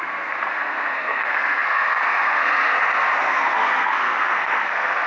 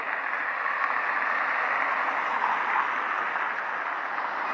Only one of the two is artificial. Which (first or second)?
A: first